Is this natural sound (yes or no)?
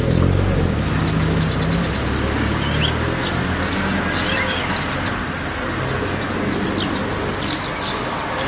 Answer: yes